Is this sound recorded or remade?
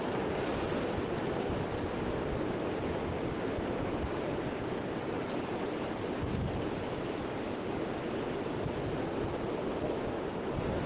recorded